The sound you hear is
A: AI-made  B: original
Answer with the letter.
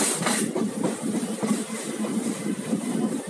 A